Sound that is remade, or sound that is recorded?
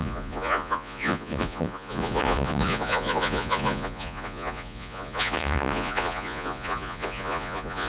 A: remade